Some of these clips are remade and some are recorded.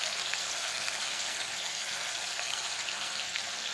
remade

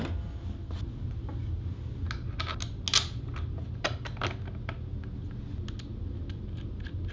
recorded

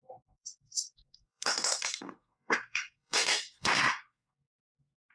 remade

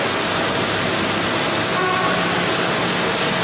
recorded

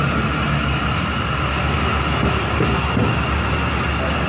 recorded